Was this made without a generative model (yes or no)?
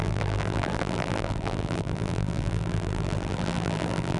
no